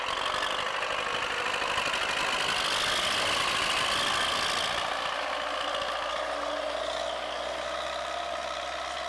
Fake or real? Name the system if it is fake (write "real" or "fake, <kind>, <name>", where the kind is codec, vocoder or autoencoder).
real